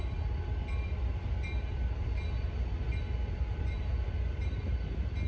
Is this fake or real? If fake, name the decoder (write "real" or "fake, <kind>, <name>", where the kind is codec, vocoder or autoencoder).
real